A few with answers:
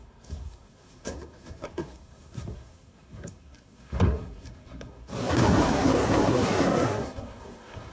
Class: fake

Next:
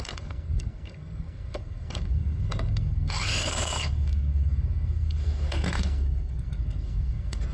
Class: fake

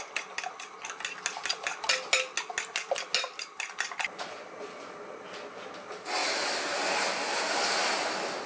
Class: real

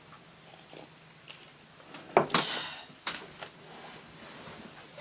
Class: real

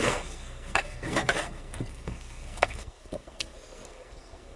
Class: fake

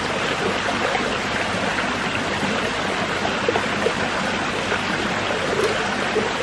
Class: real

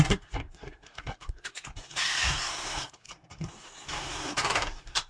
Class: fake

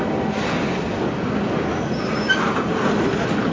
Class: real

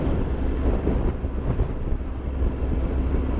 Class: real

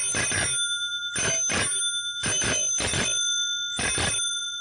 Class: real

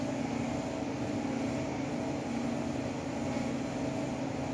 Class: real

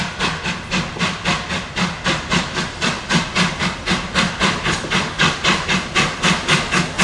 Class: real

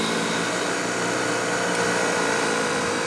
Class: real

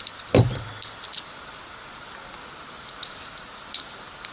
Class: real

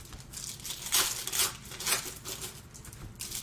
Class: real